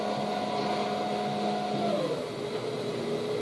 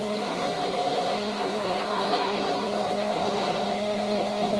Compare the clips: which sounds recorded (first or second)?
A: first